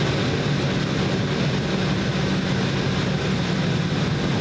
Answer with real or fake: real